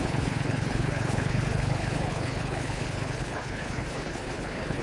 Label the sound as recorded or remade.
remade